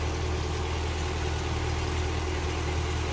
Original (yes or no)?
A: yes